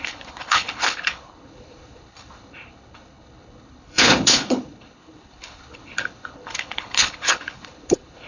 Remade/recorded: remade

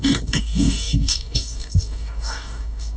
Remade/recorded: remade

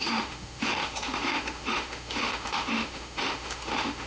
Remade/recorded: remade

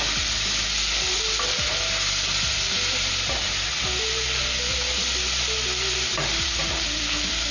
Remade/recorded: recorded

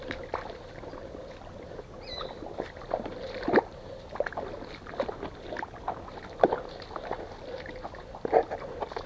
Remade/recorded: recorded